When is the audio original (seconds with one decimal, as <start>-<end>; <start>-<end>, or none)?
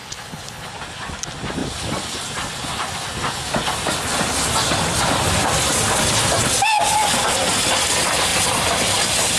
0.7-9.4